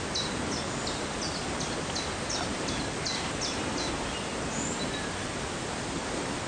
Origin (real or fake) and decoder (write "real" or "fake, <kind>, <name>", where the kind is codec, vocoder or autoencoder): real